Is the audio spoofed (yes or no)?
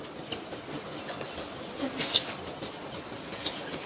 no